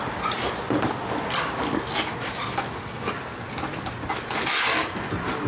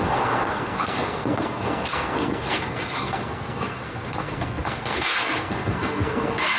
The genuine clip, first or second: first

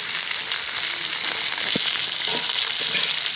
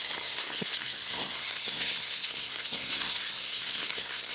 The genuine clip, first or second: first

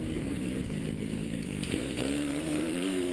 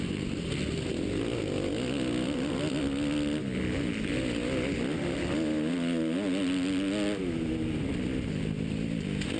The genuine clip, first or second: second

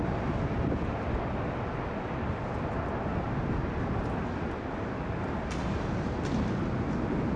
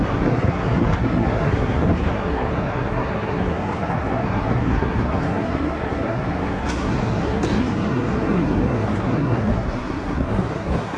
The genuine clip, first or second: first